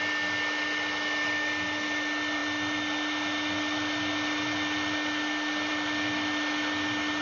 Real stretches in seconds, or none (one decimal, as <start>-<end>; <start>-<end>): 0.0-7.2